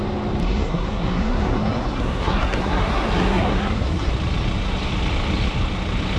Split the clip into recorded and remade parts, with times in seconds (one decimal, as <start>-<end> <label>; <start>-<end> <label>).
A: 0.0-0.4 recorded; 0.4-4.1 remade; 4.1-6.2 recorded

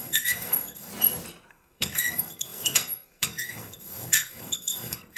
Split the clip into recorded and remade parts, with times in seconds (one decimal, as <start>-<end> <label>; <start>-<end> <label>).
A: 0.0-0.9 remade; 0.9-1.5 recorded; 1.5-5.2 remade

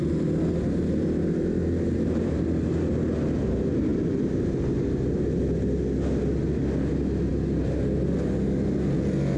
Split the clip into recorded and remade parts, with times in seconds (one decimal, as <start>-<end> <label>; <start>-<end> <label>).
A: 0.0-9.4 recorded

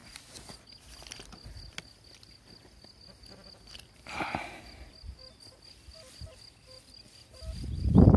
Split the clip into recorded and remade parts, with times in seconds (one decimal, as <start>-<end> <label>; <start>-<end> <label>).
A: 0.0-8.2 recorded

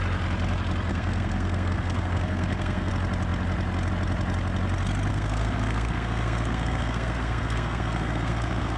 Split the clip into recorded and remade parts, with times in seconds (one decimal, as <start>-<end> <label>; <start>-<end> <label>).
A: 0.0-0.9 recorded; 0.9-2.9 remade; 2.9-5.1 recorded; 5.1-8.8 remade

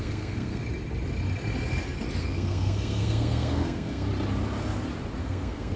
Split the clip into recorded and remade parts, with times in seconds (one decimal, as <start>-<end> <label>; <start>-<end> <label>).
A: 0.0-0.6 remade; 0.6-2.2 recorded; 2.2-4.1 remade; 4.1-5.2 recorded; 5.2-5.8 remade